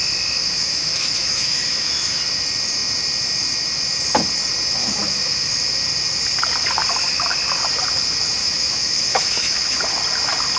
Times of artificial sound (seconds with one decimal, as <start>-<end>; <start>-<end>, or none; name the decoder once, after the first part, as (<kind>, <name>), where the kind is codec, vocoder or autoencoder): 0.4-2.2 (autoencoder, DAC-VAE); 4.8-5.5; 8.4-9.8